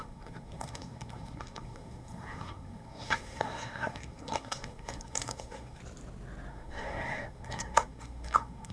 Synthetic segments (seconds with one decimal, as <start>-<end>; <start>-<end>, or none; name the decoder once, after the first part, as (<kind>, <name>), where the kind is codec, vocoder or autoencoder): 0.0-5.8 (codec, SNAC); 6.5-8.7